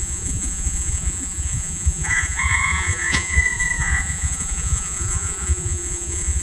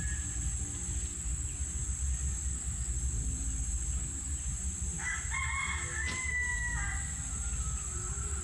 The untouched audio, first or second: second